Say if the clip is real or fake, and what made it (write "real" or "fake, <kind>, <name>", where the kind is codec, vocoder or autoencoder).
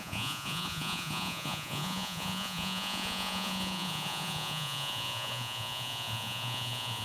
fake, vocoder, Vocos